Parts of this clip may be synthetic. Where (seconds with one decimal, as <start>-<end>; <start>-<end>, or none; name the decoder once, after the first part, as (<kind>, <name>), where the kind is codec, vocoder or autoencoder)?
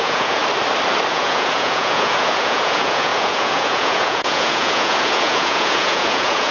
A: 0.0-0.4 (vocoder, Vocos); 1.1-6.5